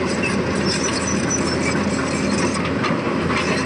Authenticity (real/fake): real